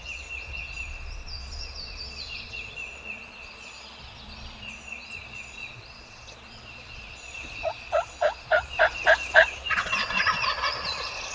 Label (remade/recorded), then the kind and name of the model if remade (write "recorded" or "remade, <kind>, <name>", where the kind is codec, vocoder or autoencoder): remade, vocoder, Vocos